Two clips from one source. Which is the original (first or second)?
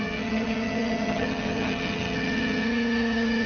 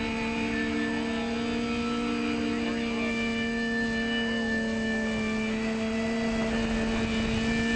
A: second